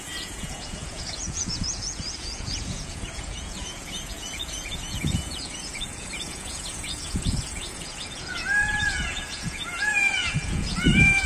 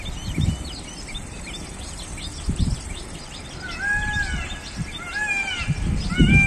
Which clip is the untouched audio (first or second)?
second